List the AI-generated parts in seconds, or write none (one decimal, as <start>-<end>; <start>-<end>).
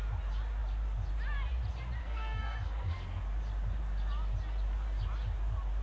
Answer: 2.0-3.2